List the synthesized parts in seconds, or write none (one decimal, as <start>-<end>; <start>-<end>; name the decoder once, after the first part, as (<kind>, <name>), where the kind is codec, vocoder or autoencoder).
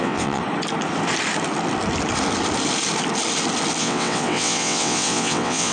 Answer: 0.0-0.4 (vocoder, WaveNeXt); 3.8-5.7